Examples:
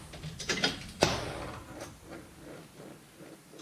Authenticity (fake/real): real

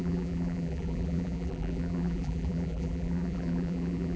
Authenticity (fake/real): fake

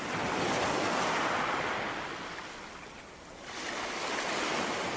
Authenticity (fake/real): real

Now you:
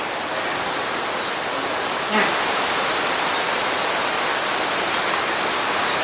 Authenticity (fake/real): real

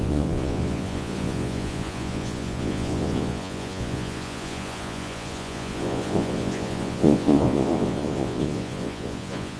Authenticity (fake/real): fake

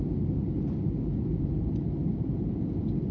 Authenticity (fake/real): real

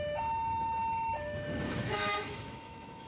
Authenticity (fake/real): fake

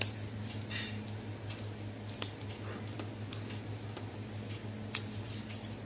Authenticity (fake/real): real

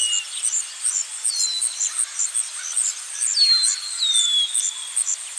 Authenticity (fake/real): real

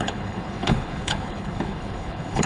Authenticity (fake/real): fake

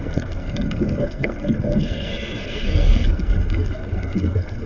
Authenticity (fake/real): fake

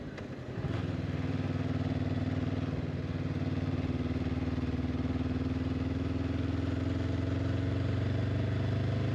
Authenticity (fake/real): real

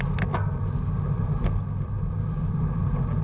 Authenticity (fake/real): real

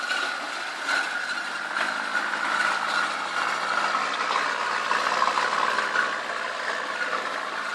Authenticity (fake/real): real